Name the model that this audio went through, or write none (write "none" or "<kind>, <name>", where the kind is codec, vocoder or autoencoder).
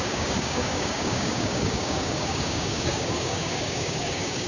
codec, DAC